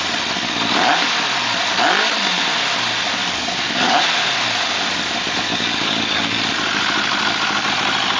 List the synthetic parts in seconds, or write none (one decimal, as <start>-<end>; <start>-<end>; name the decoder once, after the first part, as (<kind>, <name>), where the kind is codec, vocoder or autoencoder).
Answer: 3.2-4.0 (codec, DAC); 5.5-6.4